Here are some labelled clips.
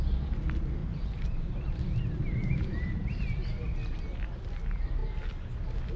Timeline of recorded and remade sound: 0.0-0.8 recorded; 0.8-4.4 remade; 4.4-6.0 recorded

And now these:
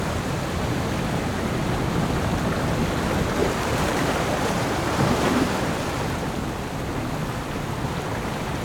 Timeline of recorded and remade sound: 0.0-3.4 recorded; 3.4-5.5 remade; 5.5-8.6 recorded

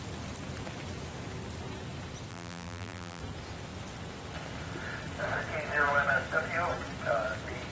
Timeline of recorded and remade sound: 0.0-2.3 recorded; 2.3-3.2 remade; 3.2-7.7 recorded

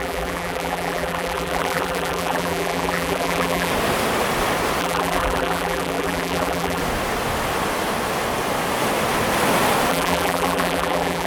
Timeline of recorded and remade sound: 0.0-3.7 remade; 3.7-4.8 recorded; 4.8-6.8 remade; 6.8-9.9 recorded; 9.9-11.3 remade

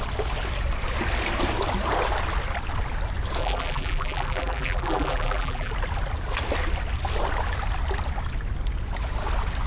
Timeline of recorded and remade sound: 0.0-3.4 recorded; 3.4-5.7 remade; 5.7-9.7 recorded

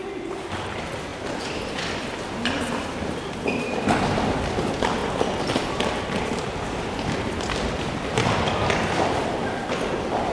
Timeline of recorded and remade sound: 0.0-10.3 recorded

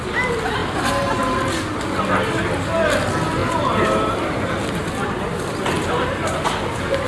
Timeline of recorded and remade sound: 0.0-7.1 recorded

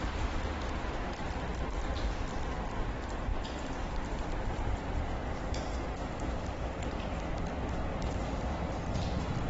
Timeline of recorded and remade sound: 0.0-3.3 recorded; 3.3-5.8 remade; 5.8-7.9 recorded; 7.9-8.5 remade; 8.5-9.5 recorded